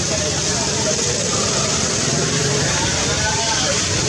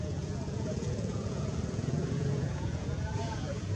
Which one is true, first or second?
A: first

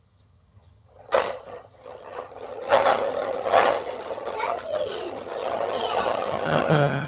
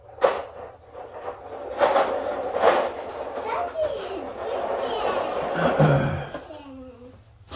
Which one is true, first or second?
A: second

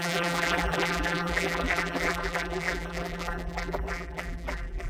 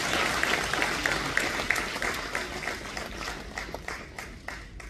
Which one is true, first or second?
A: second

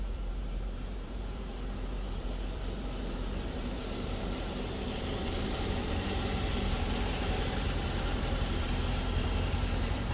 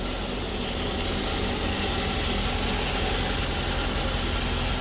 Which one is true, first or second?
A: second